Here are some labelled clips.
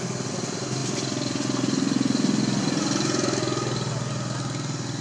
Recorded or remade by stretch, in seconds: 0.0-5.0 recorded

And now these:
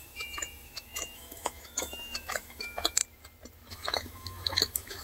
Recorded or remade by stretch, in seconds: 0.0-3.0 remade; 3.0-3.7 recorded; 3.7-5.0 remade